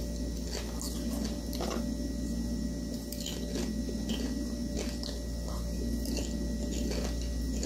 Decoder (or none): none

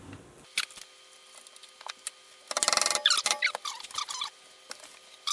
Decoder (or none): none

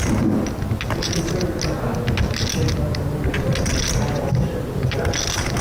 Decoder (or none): none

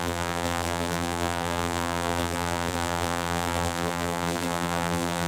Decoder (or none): vocoder, BigVGAN v2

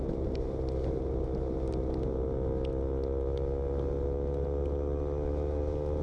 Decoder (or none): none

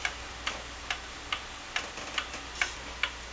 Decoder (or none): none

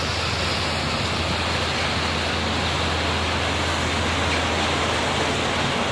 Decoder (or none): none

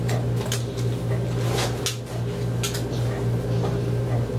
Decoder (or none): none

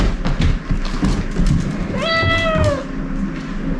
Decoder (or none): none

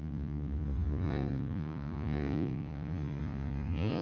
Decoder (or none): vocoder, Vocos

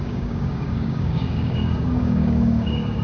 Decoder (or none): codec, DAC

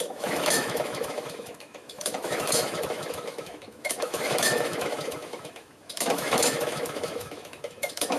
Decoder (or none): autoencoder, DAC-VAE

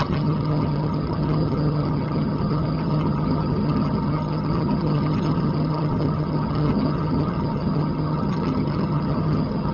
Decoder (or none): vocoder, HiFi-GAN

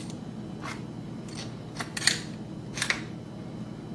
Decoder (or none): none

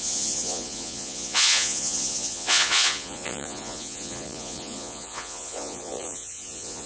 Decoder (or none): vocoder, Vocos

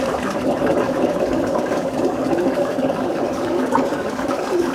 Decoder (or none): codec, DAC